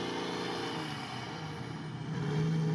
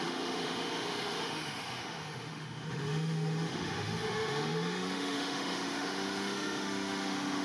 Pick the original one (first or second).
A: first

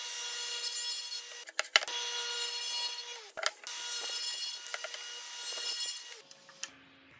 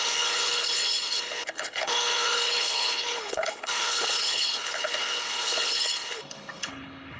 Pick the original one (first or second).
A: first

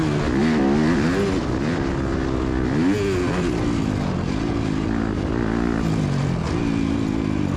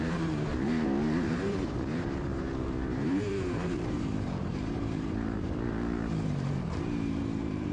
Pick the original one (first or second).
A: first